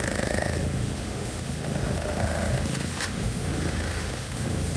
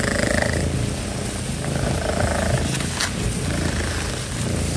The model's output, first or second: first